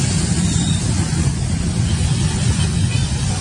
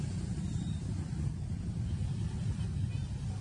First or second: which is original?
second